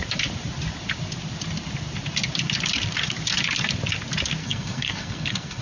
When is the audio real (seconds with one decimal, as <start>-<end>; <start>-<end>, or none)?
0.0-4.4